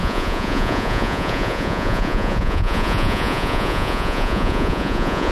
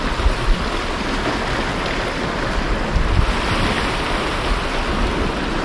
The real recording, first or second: second